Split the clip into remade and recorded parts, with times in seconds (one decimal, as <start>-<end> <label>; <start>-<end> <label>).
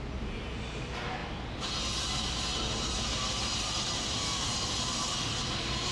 0.0-5.3 recorded; 5.3-5.9 remade